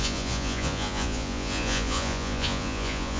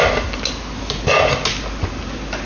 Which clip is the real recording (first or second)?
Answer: second